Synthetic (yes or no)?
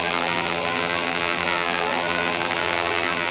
yes